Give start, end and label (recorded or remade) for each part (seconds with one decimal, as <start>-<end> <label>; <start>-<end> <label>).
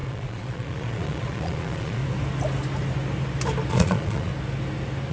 0.0-2.0 remade; 2.0-3.7 recorded; 3.7-4.3 remade; 4.3-5.1 recorded